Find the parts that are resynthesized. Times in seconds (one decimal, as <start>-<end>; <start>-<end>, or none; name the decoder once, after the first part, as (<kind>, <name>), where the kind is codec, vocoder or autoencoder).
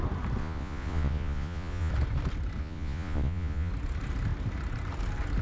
0.4-1.9 (vocoder, Vocos); 2.6-3.7